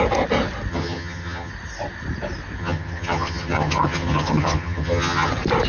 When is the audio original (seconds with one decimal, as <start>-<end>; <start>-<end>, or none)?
0.0-0.7; 1.5-2.6; 5.3-5.7